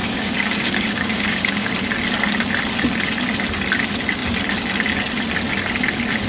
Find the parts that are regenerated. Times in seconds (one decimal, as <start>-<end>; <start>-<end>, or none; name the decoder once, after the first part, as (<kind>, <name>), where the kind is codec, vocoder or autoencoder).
0.0-1.7 (codec, DAC)